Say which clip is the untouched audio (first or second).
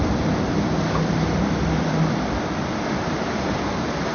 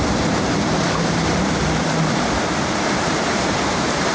first